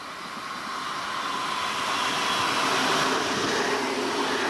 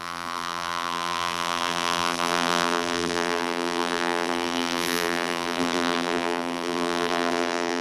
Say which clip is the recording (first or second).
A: first